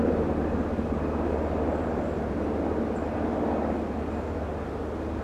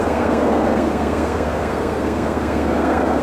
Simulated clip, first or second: second